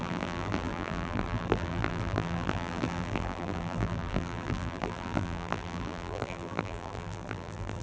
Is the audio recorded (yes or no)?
no